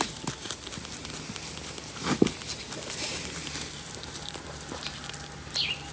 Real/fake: real